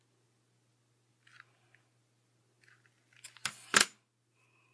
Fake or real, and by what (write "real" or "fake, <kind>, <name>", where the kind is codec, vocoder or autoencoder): real